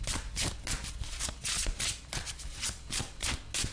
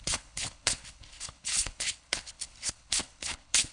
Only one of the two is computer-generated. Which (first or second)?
second